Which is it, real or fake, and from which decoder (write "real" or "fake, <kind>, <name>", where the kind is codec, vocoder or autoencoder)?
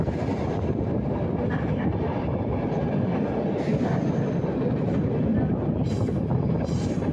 real